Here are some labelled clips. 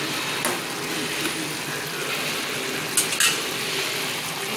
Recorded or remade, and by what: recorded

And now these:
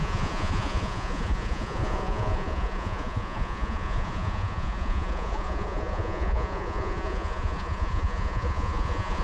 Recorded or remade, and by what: remade, vocoder, Vocos